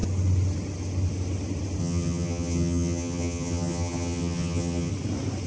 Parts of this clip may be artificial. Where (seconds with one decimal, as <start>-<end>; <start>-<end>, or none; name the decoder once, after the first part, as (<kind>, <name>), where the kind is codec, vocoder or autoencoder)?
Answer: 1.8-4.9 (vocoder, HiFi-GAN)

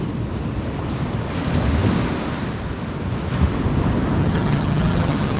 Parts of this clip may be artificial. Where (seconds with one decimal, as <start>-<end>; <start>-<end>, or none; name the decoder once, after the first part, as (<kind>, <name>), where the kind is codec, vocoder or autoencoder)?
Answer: 4.2-5.4 (vocoder, HiFi-GAN)

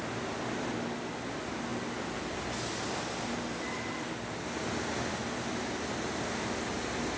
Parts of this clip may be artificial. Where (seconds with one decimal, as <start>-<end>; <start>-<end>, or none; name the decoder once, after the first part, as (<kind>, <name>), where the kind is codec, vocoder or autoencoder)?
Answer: none

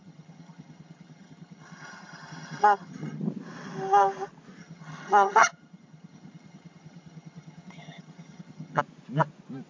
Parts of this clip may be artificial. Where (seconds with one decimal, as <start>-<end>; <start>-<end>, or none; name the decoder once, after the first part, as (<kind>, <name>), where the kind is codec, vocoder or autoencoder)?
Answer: 0.0-3.2 (vocoder, HiFi-GAN); 4.6-8.8

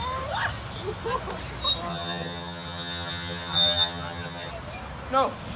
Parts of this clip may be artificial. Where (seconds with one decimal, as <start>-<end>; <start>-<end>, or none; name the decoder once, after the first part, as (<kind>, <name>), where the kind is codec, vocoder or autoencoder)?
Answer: 1.9-4.5 (vocoder, HiFi-GAN)

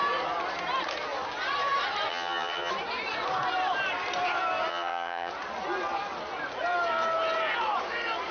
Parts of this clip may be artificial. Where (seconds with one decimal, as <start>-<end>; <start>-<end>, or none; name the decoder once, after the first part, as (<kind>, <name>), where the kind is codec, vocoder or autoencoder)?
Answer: 2.1-2.7 (vocoder, HiFi-GAN); 4.7-5.3

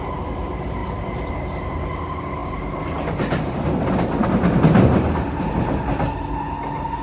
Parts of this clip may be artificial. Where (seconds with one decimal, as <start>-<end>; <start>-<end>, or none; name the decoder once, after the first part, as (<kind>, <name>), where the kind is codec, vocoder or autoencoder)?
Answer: none

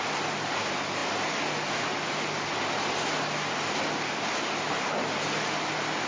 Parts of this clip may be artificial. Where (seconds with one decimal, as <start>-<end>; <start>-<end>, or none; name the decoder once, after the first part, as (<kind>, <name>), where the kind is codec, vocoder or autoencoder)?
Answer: none